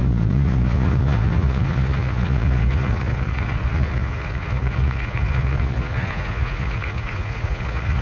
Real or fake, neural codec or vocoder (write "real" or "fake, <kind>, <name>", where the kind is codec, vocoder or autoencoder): fake, vocoder, Vocos